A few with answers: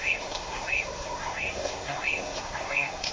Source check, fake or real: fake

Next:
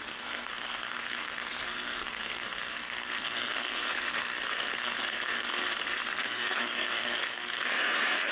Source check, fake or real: fake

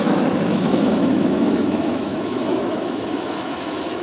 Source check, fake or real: fake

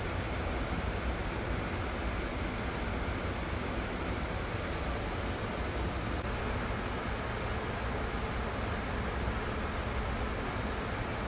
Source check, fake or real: real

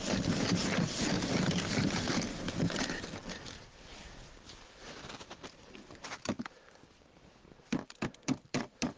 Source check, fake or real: fake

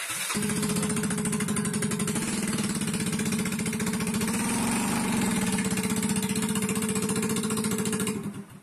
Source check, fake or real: real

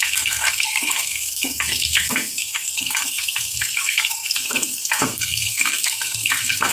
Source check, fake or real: fake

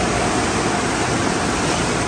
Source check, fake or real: real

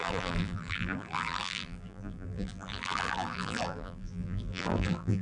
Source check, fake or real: fake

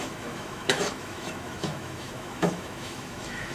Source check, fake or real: fake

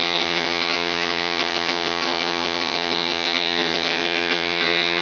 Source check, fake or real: fake